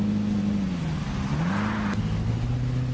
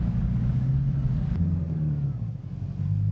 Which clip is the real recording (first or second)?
first